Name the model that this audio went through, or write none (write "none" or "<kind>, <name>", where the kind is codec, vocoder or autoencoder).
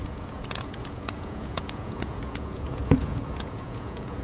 vocoder, Vocos